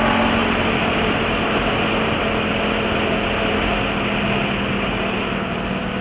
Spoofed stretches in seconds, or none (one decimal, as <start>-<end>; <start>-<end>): 0.4-2.2